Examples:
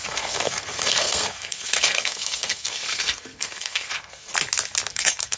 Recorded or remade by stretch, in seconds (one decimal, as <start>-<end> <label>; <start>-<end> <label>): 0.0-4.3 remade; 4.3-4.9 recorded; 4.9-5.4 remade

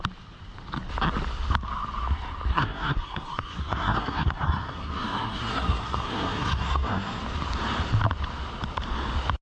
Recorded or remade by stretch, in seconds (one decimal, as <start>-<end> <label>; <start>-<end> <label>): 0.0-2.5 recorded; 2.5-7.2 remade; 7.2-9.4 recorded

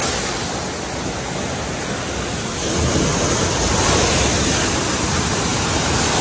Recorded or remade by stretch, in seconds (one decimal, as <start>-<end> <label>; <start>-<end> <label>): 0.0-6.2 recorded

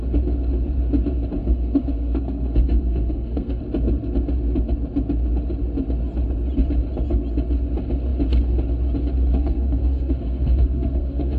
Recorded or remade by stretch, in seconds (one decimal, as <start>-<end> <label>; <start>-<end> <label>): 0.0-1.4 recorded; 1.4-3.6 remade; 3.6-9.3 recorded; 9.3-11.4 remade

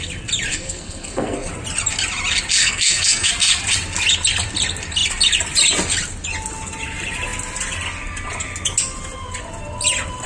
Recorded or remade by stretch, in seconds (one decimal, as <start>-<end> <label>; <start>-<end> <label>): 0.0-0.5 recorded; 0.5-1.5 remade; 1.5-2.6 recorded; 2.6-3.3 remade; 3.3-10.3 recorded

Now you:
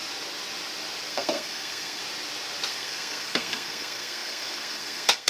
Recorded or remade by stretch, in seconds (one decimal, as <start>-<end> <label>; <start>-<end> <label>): 0.0-1.1 recorded; 1.1-2.0 remade; 2.0-2.7 recorded; 2.7-5.3 remade

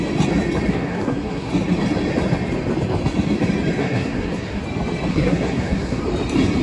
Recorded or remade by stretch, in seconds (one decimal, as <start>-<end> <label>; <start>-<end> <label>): 0.0-0.7 recorded; 0.7-1.5 remade; 1.5-3.8 recorded; 3.8-4.6 remade; 4.6-5.1 recorded; 5.1-6.0 remade; 6.0-6.6 recorded

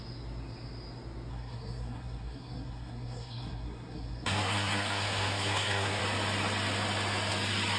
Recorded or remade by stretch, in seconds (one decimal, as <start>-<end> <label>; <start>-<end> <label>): 0.0-1.3 recorded; 1.3-6.0 remade; 6.0-7.8 recorded